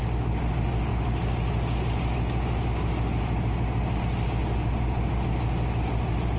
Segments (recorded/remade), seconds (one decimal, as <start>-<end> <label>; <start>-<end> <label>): 0.0-6.4 recorded